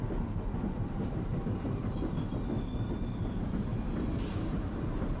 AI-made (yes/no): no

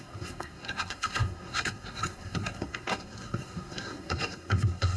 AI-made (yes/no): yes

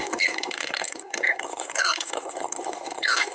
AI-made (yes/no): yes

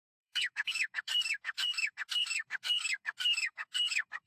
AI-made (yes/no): yes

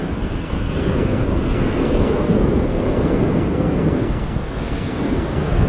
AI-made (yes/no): yes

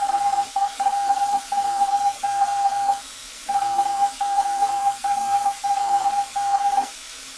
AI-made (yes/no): yes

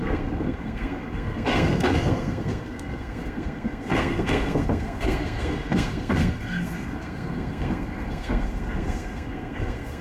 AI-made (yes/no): yes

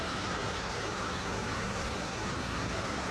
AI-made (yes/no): yes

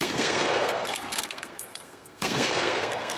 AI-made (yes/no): yes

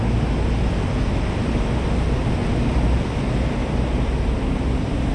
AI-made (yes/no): no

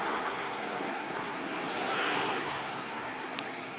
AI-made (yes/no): yes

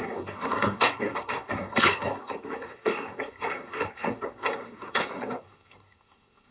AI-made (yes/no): yes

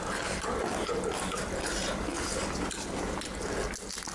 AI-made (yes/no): no